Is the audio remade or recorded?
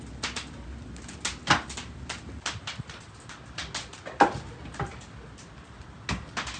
recorded